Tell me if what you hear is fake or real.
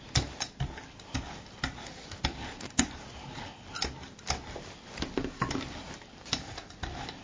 real